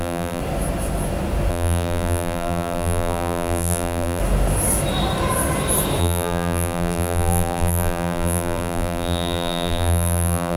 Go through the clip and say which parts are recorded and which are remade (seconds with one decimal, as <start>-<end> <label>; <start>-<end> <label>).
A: 0.0-0.4 remade; 0.4-1.5 recorded; 1.5-4.2 remade; 4.2-6.0 recorded; 6.0-10.6 remade